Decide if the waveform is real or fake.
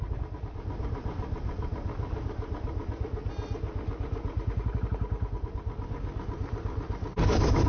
real